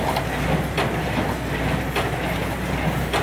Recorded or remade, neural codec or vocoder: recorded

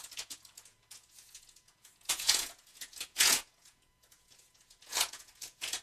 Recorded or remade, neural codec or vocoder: remade, vocoder, Vocos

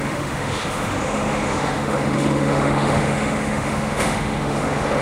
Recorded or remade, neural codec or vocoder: remade, autoencoder, DAC-VAE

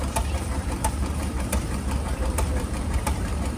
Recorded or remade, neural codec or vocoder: remade, vocoder, BigVGAN v2